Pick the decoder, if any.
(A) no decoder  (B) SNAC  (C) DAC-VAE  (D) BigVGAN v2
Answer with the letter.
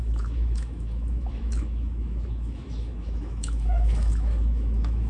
C